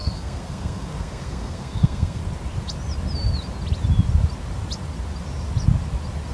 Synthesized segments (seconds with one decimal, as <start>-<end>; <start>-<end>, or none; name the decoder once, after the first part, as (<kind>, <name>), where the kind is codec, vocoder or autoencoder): 0.0-2.2 (codec, SNAC)